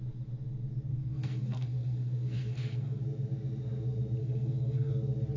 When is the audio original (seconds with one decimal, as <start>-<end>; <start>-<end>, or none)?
0.0-0.9; 3.0-4.2; 4.9-5.4